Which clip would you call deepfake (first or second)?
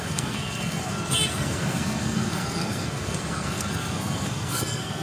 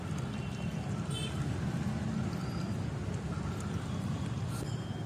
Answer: first